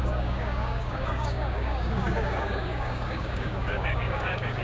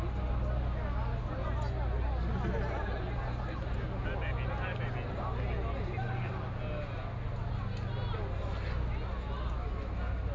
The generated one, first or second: first